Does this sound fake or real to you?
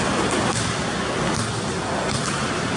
real